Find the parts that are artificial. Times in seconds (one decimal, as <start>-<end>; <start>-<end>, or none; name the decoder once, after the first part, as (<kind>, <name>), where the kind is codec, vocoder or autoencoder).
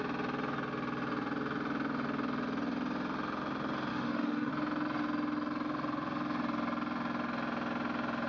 3.9-4.5 (autoencoder, DAC-VAE)